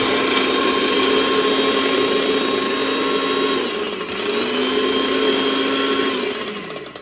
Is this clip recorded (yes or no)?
yes